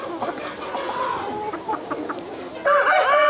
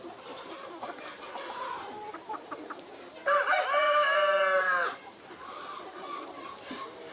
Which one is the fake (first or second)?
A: second